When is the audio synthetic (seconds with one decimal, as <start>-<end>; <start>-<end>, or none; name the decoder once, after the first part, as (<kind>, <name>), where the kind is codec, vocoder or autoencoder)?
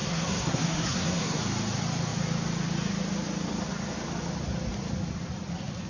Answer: 0.0-1.4 (codec, SNAC)